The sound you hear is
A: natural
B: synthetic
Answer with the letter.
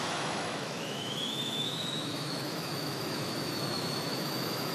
B